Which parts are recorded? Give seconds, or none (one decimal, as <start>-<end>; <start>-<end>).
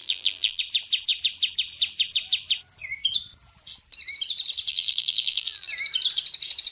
0.6-4.7; 5.7-6.7